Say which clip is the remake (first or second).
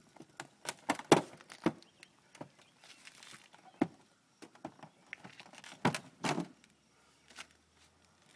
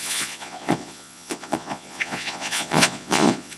second